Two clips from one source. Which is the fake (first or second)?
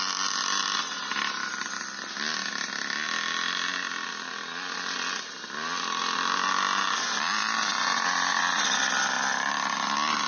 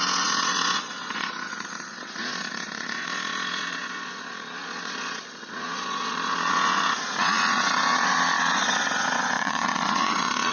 second